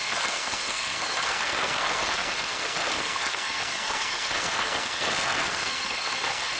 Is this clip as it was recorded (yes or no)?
no